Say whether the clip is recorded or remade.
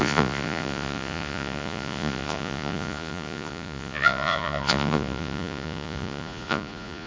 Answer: remade